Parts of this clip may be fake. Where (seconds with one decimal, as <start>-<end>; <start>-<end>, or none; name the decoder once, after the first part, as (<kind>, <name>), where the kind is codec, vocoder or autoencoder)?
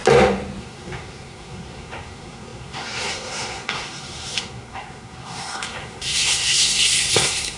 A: 0.6-7.6 (codec, SNAC)